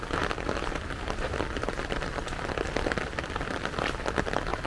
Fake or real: real